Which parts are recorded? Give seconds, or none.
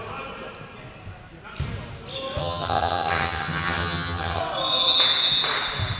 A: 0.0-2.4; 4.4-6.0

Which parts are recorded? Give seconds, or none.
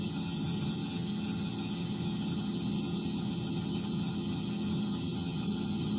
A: none